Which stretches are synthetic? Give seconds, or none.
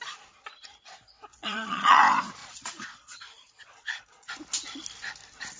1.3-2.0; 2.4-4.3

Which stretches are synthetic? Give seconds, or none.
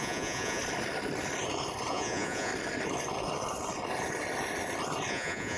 0.0-0.6; 1.9-2.5; 5.1-5.6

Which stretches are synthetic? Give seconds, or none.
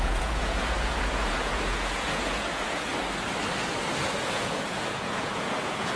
0.0-2.9; 4.2-6.0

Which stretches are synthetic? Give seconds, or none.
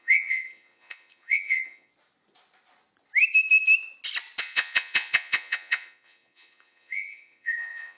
0.0-1.9; 4.4-8.0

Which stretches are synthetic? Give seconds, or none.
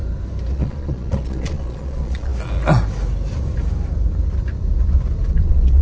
0.5-2.3; 5.3-5.8